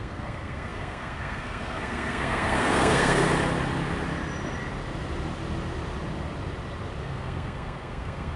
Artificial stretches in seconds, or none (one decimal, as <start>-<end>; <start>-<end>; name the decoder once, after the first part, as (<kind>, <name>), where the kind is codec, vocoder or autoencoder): 0.0-3.3 (codec, SNAC); 7.0-8.4